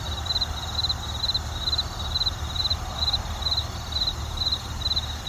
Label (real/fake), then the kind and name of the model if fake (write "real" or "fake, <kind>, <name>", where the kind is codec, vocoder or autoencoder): real